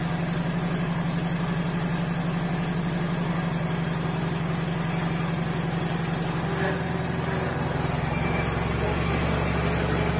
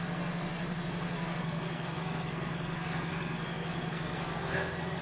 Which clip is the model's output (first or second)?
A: second